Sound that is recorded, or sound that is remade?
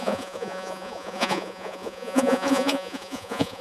remade